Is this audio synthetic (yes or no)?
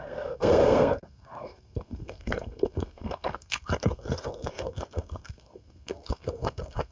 yes